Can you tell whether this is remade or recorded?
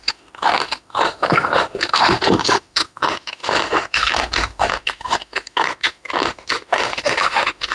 remade